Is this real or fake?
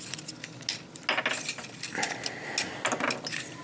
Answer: real